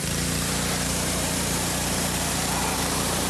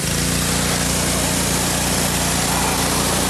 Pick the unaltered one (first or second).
second